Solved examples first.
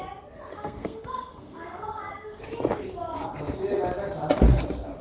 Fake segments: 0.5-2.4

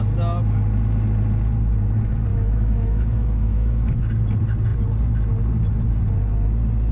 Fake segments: 2.3-4.0

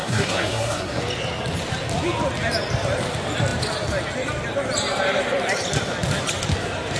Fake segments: 0.0-1.0

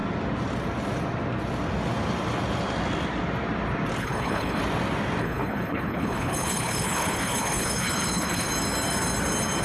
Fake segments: 4.0-4.6; 5.2-8.5

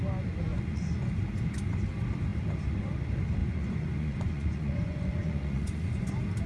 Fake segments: 0.5-1.1; 3.4-6.1

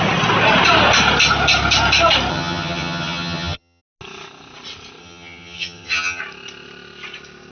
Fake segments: 2.3-3.8; 5.0-6.2

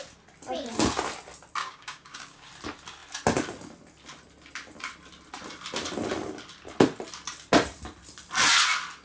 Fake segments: 1.6-2.5